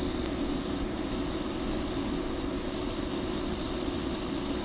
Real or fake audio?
real